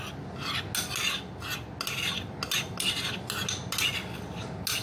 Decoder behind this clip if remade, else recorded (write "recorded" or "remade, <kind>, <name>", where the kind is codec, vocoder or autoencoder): recorded